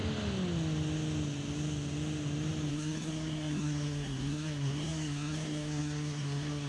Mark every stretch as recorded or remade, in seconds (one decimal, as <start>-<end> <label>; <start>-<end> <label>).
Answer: 0.0-2.7 recorded; 2.7-6.7 remade